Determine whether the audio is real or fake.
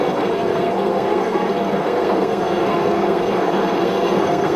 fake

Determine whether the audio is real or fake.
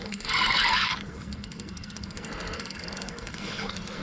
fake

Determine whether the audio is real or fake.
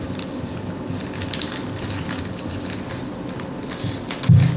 real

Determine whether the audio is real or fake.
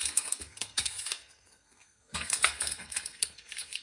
fake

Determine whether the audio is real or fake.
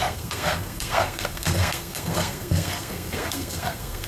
fake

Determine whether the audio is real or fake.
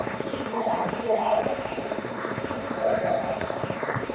fake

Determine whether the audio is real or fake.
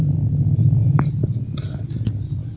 real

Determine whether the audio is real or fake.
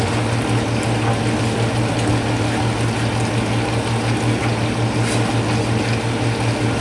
real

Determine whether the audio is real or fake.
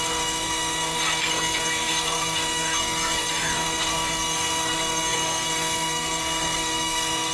fake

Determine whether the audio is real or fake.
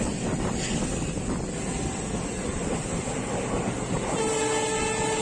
real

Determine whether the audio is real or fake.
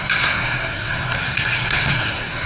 fake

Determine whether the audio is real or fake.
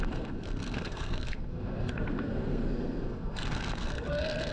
fake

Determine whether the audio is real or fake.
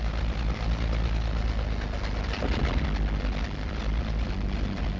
real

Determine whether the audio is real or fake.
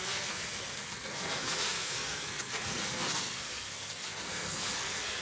fake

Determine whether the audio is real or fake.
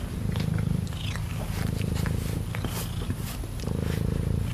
real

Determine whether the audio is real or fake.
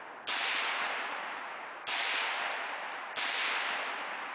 real